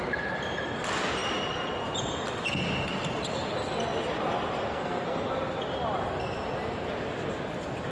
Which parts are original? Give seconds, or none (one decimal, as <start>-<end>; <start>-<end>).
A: 0.0-4.7; 5.3-7.9